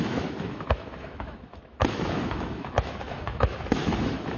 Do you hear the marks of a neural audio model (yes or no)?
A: yes